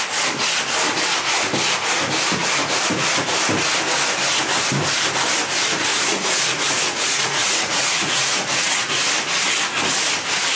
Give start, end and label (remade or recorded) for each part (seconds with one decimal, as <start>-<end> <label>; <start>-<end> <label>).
0.0-5.9 recorded; 5.9-9.0 remade; 9.0-10.6 recorded